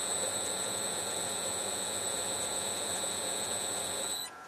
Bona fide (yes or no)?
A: no